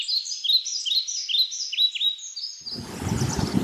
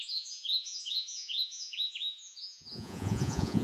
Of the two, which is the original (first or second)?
first